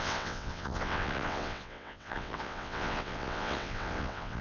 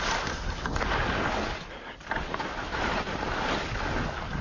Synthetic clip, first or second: first